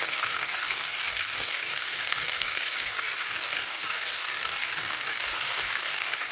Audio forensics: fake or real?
fake